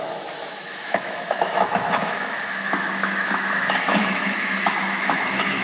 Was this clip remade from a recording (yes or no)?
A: yes